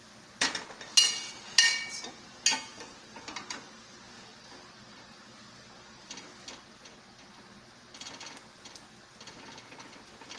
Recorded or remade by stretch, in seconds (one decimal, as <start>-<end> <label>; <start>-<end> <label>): 0.0-10.4 recorded